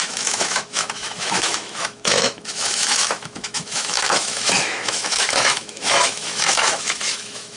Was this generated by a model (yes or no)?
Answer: yes